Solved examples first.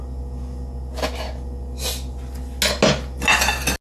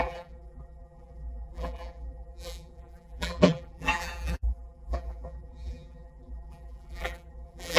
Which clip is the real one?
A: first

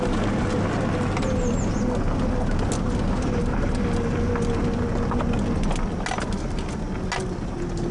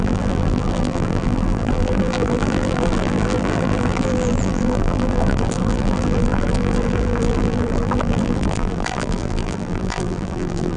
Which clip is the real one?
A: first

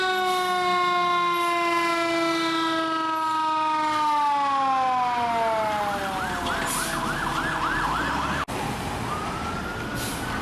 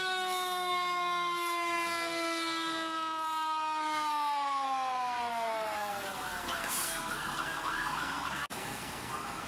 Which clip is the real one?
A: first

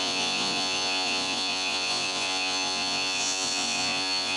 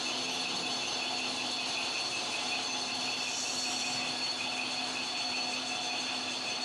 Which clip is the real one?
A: second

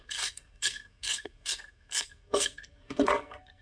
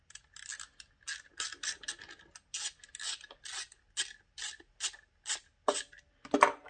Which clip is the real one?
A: second